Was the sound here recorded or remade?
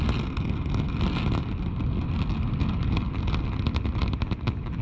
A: recorded